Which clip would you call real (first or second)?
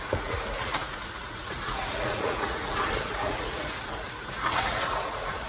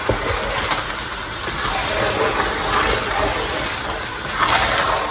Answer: second